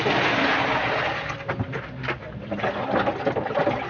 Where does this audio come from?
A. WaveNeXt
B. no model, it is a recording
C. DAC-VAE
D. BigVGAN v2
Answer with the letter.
B